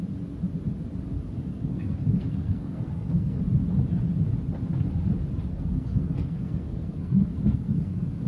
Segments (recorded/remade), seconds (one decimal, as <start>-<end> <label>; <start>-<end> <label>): 0.0-1.5 recorded; 1.5-3.4 remade; 3.4-5.5 recorded; 5.5-8.3 remade